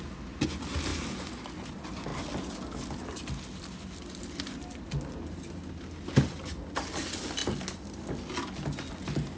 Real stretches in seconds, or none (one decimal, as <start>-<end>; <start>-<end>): 0.0-9.4